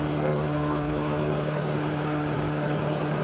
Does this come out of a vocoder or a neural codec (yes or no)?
yes